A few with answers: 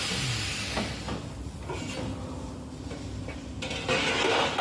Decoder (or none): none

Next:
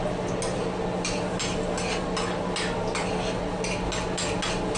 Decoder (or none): none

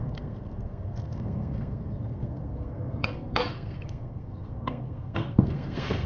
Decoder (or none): codec, SNAC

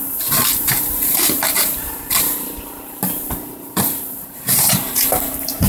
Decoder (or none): vocoder, BigVGAN v2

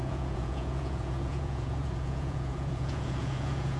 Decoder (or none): vocoder, Vocos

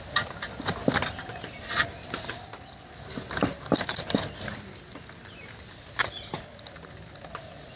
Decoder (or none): none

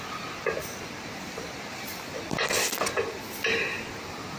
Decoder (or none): none